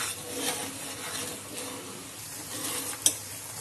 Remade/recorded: recorded